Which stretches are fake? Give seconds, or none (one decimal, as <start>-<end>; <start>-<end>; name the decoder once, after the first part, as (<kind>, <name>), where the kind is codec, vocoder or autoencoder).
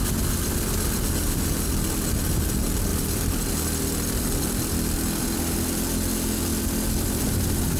none